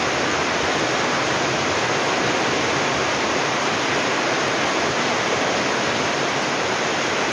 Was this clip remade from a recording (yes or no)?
no